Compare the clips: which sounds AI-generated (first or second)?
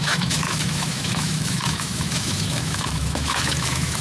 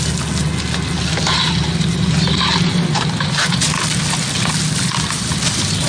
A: first